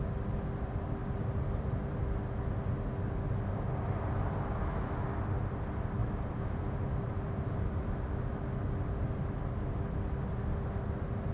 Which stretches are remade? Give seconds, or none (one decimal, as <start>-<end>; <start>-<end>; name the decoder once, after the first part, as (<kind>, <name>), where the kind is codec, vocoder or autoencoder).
1.0-2.0 (vocoder, BigVGAN v2); 6.0-8.1